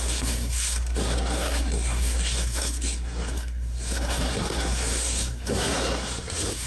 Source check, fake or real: fake